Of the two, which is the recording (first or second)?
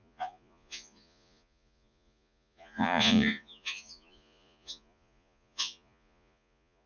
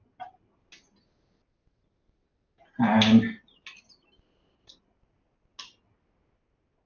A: second